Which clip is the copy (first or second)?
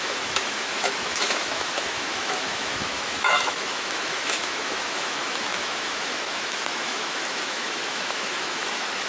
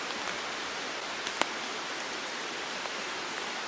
first